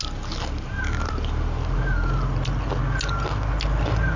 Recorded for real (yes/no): yes